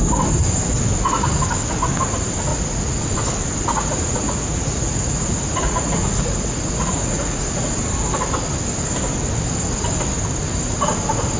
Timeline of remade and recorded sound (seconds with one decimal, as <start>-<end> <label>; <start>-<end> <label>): 0.0-2.5 recorded; 2.5-3.0 remade; 3.0-3.7 recorded; 3.7-7.8 remade; 7.8-11.4 recorded